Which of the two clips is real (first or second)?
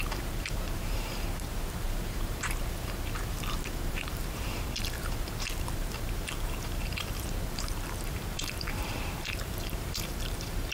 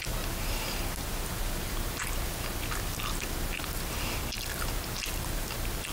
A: second